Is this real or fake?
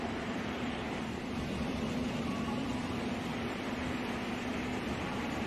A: fake